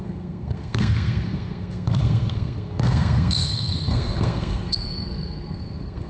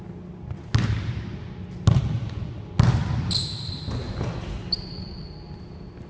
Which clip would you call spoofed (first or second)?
first